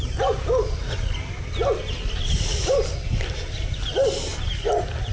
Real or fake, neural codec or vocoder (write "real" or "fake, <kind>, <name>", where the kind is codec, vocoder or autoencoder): real